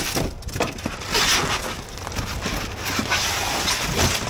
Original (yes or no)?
yes